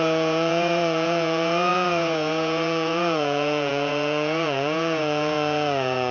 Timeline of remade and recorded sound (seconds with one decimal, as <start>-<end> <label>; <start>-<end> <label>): 0.0-6.1 remade